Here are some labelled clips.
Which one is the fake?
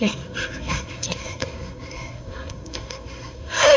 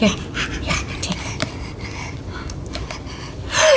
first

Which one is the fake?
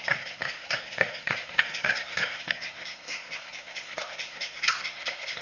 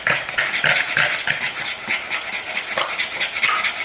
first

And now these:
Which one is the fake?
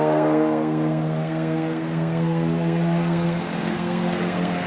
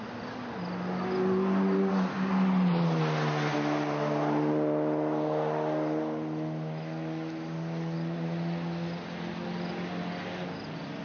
first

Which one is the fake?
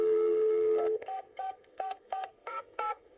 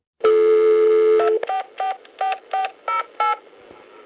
first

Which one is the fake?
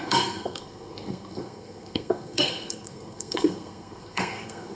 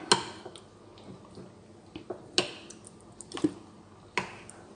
first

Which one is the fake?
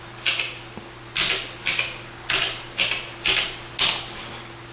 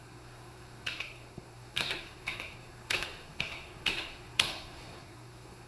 second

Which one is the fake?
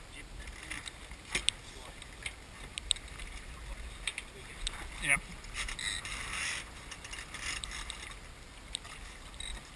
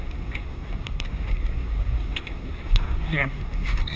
second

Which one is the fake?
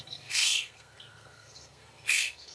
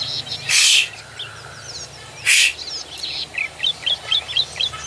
first